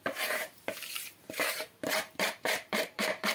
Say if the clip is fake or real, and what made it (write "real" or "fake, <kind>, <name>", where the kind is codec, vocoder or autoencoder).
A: fake, vocoder, BigVGAN v2